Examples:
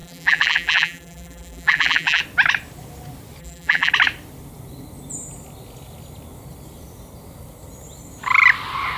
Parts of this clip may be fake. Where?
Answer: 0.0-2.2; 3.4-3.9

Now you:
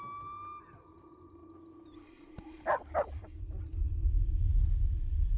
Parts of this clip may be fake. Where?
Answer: none

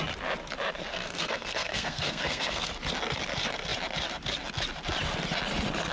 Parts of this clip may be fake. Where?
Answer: 0.9-2.7